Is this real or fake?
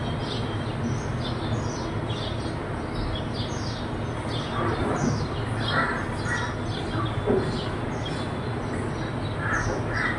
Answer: real